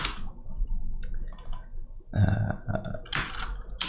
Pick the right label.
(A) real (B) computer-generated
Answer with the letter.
A